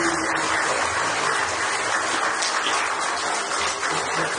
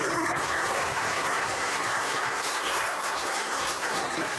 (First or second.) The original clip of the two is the first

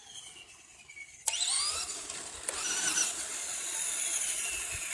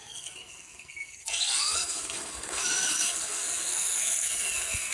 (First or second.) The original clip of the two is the first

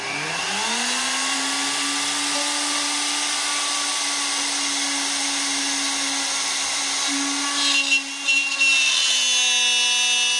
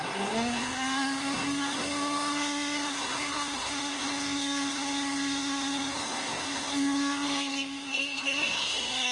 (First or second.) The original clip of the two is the first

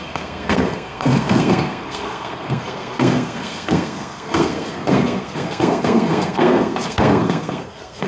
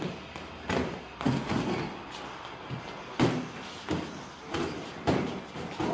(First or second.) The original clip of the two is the second